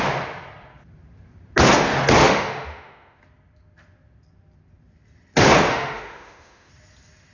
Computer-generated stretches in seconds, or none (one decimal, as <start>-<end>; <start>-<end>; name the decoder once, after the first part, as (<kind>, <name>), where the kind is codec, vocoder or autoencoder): 2.2-3.2 (autoencoder, DAC-VAE); 5.7-6.7

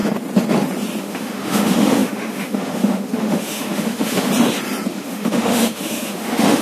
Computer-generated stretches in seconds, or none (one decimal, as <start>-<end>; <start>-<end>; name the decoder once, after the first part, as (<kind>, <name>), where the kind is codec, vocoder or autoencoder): 1.0-4.3 (autoencoder, DAC-VAE); 4.9-6.6

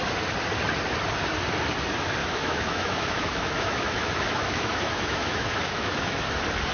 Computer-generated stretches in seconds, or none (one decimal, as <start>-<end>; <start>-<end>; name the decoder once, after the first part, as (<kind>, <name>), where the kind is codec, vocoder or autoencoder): 2.2-6.2 (autoencoder, DAC-VAE)